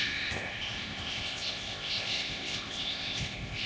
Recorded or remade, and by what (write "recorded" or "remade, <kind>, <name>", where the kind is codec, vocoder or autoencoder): remade, codec, ZipCodec